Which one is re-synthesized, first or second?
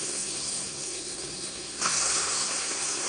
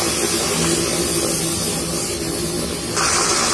first